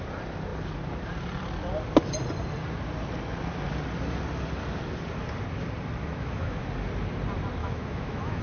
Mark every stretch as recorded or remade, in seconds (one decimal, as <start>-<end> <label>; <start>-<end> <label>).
0.0-6.0 recorded; 6.0-6.6 remade; 6.6-7.6 recorded; 7.6-8.4 remade